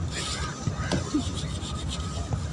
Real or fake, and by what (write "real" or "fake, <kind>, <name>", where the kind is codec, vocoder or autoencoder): real